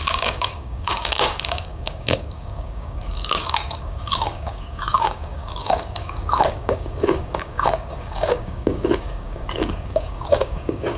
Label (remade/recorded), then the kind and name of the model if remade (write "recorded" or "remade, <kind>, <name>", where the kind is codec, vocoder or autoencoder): remade, codec, DAC